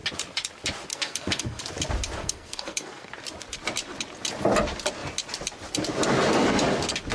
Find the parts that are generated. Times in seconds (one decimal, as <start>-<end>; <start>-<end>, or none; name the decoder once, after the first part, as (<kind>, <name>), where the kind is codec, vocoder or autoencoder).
0.9-1.6 (codec, SNAC); 2.2-3.1

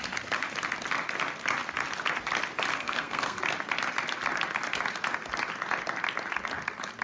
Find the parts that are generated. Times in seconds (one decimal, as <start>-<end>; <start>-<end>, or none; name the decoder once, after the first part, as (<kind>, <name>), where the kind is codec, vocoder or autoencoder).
2.7-3.4 (codec, SNAC)

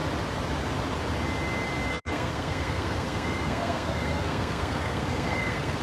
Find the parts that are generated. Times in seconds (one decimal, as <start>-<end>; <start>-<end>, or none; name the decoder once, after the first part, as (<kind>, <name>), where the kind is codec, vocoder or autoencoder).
1.9-5.8 (codec, SNAC)

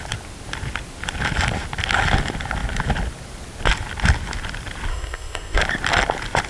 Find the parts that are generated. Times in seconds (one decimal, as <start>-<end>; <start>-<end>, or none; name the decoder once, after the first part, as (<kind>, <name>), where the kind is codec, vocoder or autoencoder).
4.9-5.6 (codec, SNAC)

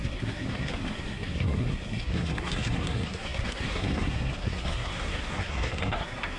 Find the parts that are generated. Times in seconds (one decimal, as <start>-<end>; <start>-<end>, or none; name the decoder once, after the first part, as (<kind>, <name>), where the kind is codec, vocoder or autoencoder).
0.0-6.4 (codec, SNAC)

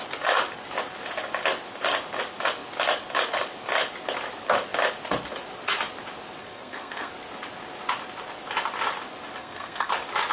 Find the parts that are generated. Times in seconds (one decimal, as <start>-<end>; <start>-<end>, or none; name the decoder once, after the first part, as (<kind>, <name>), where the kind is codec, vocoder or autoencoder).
6.4-7.1 (codec, SNAC); 9.4-9.9

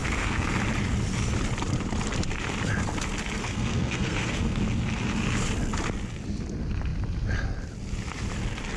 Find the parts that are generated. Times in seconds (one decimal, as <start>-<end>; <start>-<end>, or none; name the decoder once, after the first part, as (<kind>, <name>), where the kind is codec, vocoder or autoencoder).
0.0-0.5 (codec, SNAC); 3.4-4.6

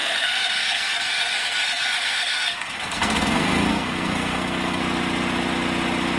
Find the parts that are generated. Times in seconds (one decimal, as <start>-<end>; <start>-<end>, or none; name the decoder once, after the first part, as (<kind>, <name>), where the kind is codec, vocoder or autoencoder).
0.0-4.8 (codec, SNAC)